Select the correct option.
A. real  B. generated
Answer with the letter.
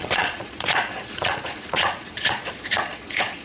B